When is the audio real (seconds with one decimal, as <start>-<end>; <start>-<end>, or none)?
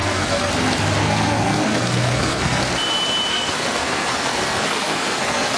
0.5-1.0; 2.6-3.3